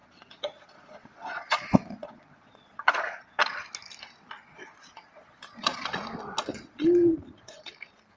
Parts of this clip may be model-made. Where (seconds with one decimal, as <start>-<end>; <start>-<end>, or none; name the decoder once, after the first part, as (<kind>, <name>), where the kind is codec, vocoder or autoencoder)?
0.0-3.4 (vocoder, Vocos); 4.4-5.9; 6.5-7.7